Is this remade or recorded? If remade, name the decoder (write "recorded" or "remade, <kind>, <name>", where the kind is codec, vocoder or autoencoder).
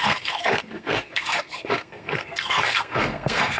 remade, codec, SNAC